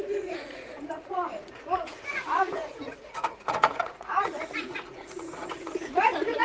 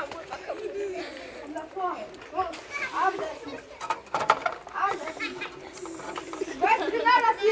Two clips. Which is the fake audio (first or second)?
first